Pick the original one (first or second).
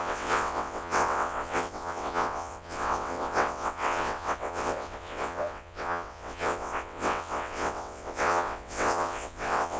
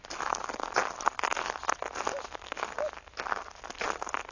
second